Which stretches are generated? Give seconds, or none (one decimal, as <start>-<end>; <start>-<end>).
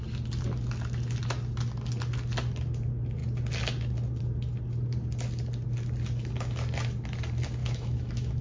7.6-8.4